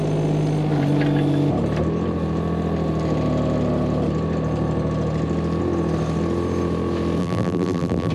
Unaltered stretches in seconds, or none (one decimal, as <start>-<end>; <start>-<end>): 0.0-7.2